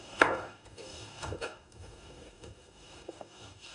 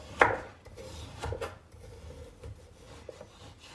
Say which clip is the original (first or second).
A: second